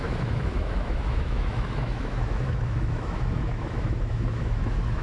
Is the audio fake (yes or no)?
yes